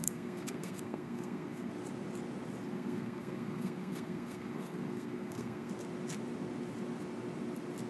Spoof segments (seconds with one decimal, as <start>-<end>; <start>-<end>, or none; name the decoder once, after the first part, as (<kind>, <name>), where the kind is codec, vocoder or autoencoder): 0.0-1.7 (codec, SNAC); 2.6-5.7